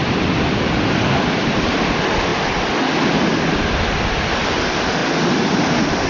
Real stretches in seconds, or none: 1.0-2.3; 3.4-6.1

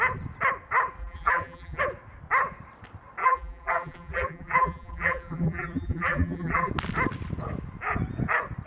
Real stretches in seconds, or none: 0.0-1.0; 1.8-3.2; 6.7-8.7

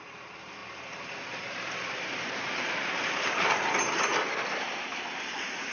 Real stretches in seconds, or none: 0.0-0.6; 4.0-5.7

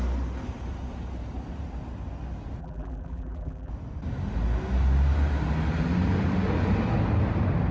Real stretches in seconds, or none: 0.0-2.6; 3.7-7.7

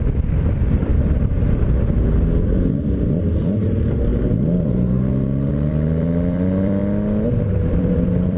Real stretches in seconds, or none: 0.9-2.3; 4.1-5.5; 6.8-7.5